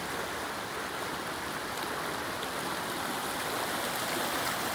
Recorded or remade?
recorded